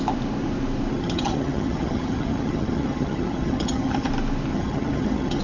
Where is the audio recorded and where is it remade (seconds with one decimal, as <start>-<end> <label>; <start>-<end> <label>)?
0.0-0.9 recorded; 0.9-4.1 remade; 4.1-4.5 recorded; 4.5-5.4 remade